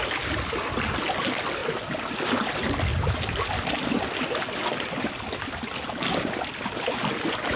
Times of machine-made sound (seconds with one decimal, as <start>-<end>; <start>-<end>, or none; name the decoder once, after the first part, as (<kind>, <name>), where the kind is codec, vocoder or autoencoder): none